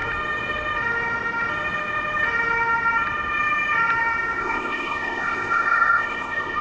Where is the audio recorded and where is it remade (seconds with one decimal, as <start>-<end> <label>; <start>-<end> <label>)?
0.0-4.4 recorded; 4.4-6.6 remade